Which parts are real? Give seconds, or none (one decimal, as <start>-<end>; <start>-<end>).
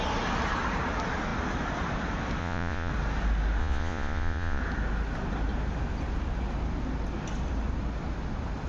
0.0-2.4; 2.9-3.6; 4.6-8.7